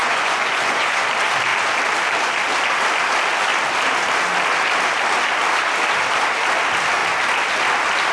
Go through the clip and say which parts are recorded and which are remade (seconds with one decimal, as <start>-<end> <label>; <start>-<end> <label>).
0.0-1.1 remade; 1.1-8.1 recorded